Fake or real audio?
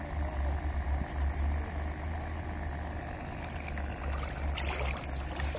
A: real